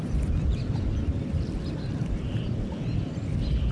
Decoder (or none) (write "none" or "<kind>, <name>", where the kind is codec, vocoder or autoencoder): none